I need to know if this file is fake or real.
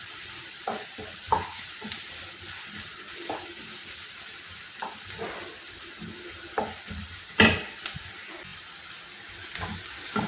real